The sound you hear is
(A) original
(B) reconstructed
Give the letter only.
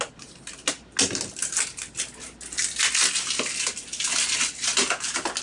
A